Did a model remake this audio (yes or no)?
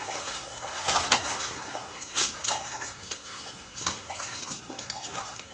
yes